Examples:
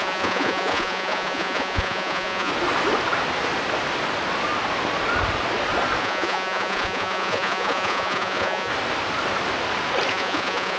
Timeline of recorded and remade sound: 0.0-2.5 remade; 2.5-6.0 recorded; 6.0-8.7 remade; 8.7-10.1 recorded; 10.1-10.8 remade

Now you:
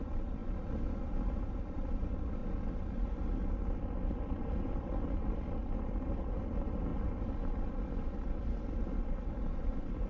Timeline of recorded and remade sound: 0.0-0.4 remade; 0.4-1.1 recorded; 1.1-2.4 remade; 2.4-4.1 recorded; 4.1-6.9 remade; 6.9-9.3 recorded; 9.3-10.1 remade